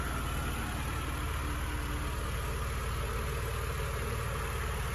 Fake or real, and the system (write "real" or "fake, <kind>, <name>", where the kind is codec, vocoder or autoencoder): real